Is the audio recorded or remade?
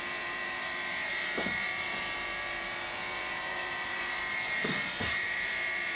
remade